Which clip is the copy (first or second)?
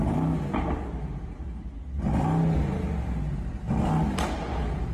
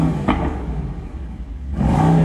second